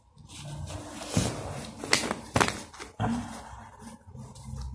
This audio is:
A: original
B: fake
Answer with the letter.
A